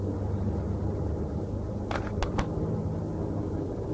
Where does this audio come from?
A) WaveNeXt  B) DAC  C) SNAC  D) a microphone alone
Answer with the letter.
D